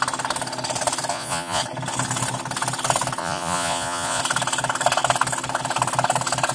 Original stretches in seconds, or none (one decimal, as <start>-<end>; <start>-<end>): 0.0-1.1; 1.6-3.2; 4.2-6.5